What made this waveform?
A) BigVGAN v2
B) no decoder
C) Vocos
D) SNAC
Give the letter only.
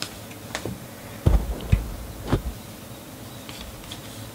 B